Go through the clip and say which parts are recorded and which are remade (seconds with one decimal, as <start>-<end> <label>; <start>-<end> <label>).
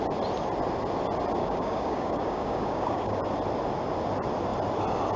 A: 0.0-1.4 recorded; 1.4-3.2 remade; 3.2-5.2 recorded